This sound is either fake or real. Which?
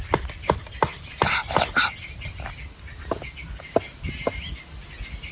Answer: real